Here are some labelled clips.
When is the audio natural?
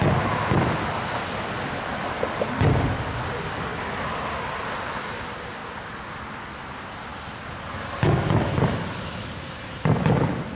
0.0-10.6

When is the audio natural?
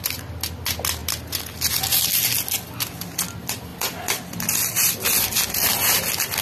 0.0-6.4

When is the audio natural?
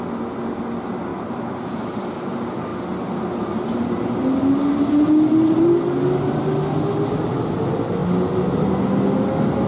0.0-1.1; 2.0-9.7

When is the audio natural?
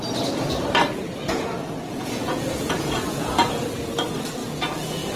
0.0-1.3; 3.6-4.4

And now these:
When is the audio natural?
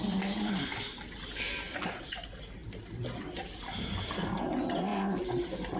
0.0-5.8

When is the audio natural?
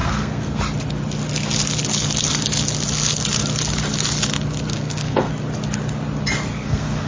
0.6-4.7; 5.3-6.5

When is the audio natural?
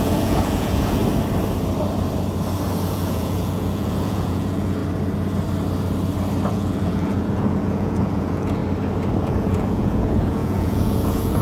1.0-2.9; 4.8-6.5; 8.6-9.2